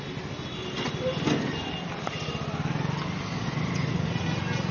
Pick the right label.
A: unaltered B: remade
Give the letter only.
A